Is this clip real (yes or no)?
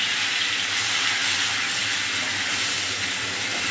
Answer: no